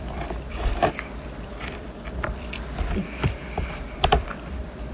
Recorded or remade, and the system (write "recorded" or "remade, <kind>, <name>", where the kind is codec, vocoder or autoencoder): remade, vocoder, BigVGAN v2